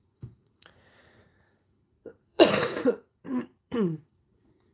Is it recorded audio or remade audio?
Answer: remade